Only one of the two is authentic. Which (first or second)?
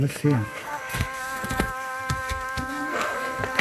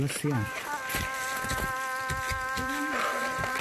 second